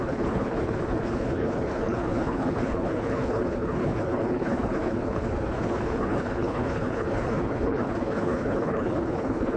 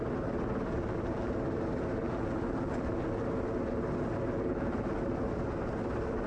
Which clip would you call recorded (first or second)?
second